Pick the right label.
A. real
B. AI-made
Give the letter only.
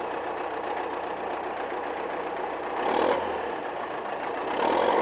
A